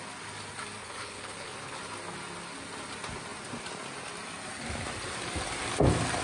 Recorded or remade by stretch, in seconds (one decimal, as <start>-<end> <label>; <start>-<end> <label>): 0.0-0.8 recorded; 0.8-1.8 remade; 1.8-6.2 recorded